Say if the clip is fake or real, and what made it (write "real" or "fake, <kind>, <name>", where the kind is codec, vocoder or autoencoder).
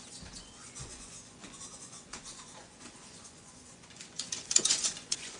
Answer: fake, vocoder, Vocos